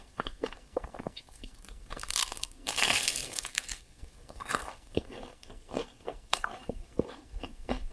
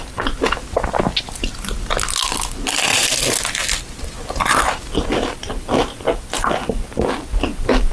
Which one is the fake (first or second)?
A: first